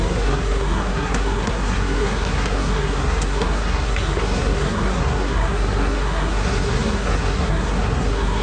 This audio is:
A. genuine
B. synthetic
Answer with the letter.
B